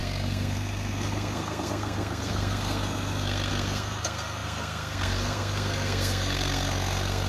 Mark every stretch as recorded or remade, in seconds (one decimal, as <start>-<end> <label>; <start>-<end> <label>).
0.0-7.3 remade